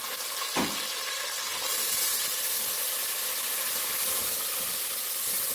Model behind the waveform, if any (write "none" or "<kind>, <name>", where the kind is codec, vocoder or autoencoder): none